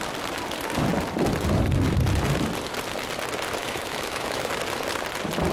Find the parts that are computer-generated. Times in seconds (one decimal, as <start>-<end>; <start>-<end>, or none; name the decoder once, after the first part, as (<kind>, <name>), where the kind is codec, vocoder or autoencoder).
3.6-4.5 (autoencoder, DAC-VAE)